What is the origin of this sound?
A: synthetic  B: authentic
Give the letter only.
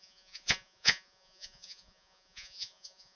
A